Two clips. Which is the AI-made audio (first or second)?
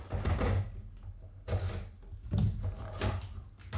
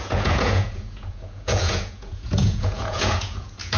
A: second